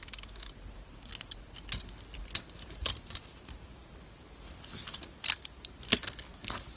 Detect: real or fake real